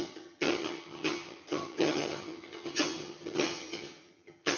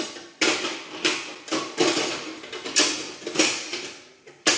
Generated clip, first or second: first